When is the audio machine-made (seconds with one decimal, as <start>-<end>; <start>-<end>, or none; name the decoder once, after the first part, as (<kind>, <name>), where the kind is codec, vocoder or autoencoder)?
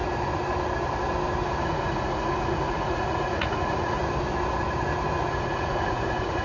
1.6-4.0 (vocoder, Vocos); 5.3-6.4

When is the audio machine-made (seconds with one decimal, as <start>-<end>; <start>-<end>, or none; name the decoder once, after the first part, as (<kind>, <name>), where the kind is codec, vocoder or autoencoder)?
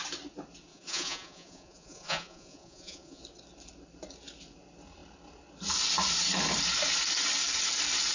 0.7-3.2 (vocoder, Vocos)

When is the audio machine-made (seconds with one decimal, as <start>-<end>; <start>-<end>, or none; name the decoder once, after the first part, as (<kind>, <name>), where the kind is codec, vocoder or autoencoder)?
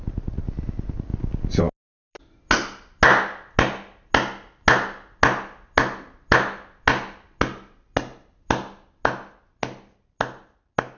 none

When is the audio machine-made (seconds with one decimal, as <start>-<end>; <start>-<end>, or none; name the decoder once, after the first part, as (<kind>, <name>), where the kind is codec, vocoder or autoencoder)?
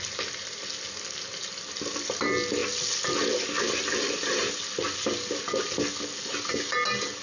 none